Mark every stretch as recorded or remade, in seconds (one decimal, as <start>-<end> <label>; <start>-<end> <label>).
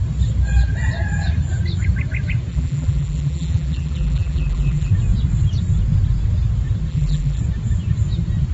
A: 0.0-2.5 recorded; 2.5-4.9 remade; 4.9-6.9 recorded; 6.9-7.4 remade; 7.4-8.5 recorded